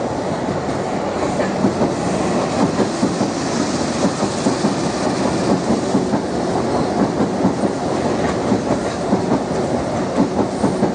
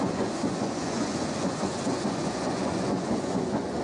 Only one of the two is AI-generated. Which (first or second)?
second